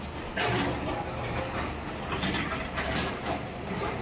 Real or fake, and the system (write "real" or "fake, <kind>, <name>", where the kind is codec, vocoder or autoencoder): real